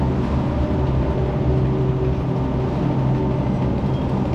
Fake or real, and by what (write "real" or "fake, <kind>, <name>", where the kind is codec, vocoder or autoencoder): real